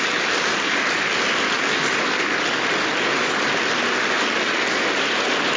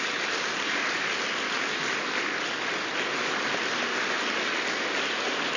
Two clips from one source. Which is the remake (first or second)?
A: second